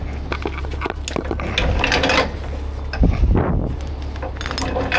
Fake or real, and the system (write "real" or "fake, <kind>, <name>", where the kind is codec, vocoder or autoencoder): real